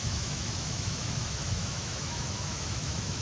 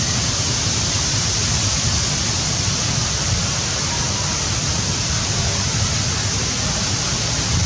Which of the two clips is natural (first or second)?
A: second